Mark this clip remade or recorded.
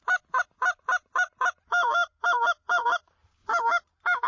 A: remade